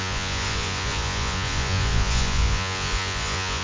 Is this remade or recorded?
remade